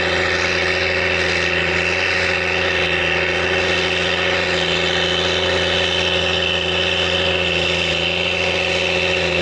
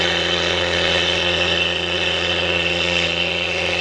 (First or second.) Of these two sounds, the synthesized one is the second